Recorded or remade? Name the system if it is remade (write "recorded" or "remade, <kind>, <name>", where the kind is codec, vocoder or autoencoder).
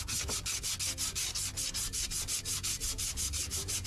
recorded